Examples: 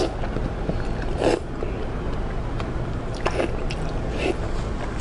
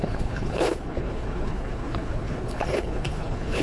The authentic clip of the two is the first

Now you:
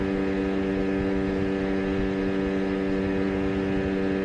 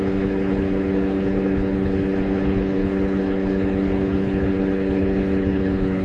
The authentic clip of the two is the first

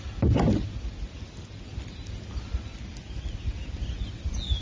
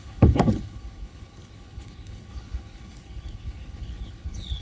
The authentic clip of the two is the first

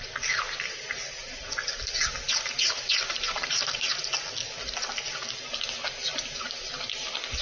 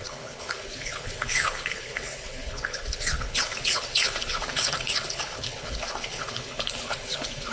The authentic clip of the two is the first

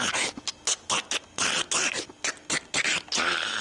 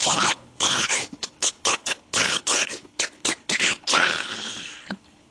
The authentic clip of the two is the first